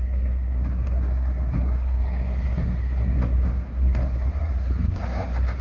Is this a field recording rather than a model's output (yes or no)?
no